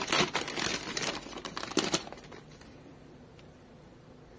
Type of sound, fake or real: real